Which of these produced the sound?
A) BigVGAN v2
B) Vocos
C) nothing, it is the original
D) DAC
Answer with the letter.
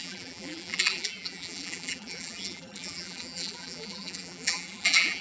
A